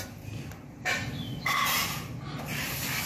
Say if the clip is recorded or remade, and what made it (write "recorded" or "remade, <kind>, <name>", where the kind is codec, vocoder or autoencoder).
recorded